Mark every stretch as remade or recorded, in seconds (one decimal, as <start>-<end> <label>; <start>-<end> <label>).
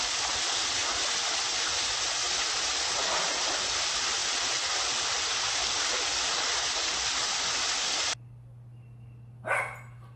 0.0-0.8 remade; 0.8-3.7 recorded; 3.7-10.2 remade